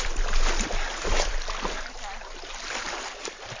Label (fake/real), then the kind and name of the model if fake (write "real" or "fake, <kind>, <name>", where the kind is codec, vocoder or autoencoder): real